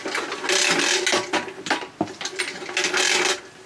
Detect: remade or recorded recorded